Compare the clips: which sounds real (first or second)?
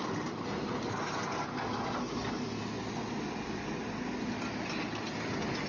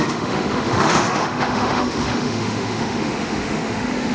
first